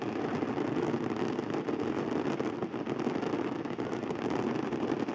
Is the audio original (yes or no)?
yes